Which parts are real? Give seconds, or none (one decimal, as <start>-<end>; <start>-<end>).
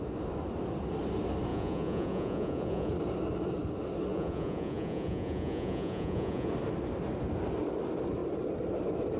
0.0-1.5; 2.9-4.1; 6.5-9.2